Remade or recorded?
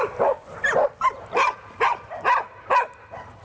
recorded